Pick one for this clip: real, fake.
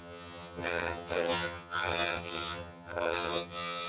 fake